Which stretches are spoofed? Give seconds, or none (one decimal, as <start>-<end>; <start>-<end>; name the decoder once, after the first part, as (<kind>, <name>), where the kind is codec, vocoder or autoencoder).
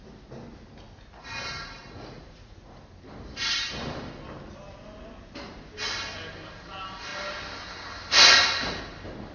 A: 1.6-2.8 (vocoder, Vocos)